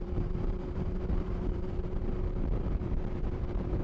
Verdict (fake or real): fake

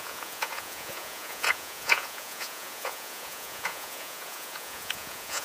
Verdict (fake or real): fake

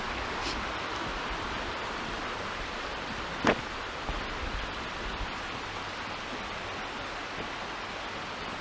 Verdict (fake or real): real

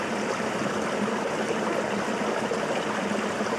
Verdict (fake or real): real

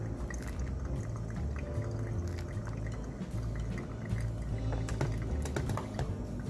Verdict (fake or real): real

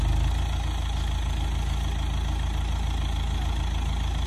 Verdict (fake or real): real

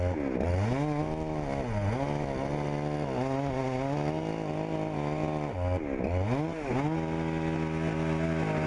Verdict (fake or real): real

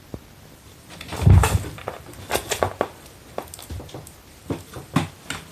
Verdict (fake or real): real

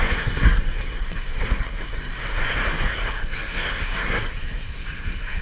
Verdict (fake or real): fake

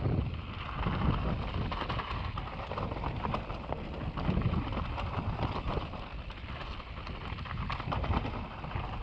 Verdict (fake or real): real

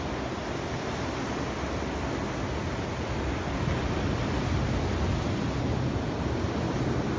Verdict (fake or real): real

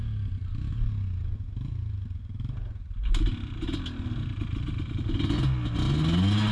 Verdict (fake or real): real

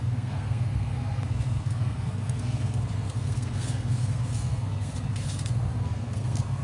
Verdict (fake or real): fake